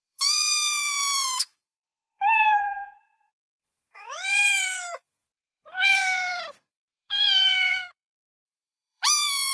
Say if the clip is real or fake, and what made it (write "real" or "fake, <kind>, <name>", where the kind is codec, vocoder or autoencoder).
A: fake, vocoder, Vocos